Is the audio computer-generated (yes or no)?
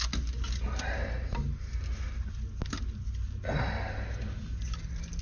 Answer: no